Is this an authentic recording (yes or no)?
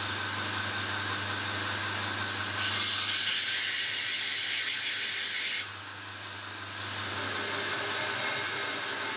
yes